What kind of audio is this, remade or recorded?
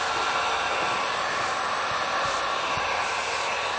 recorded